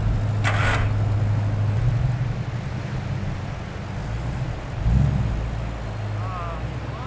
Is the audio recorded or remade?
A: recorded